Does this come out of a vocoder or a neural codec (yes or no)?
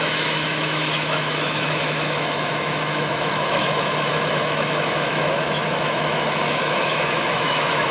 yes